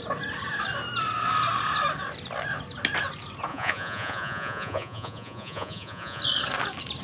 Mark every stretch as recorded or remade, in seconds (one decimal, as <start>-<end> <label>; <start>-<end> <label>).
0.0-3.5 recorded; 3.5-6.2 remade; 6.2-7.0 recorded